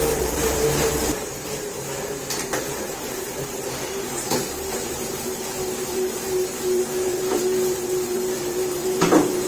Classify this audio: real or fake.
fake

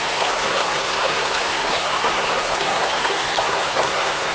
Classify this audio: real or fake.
fake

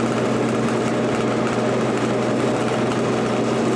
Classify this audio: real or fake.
real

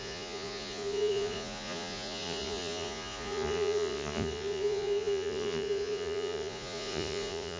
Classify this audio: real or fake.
fake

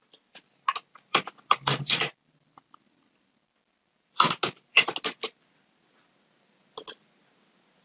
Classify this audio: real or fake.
real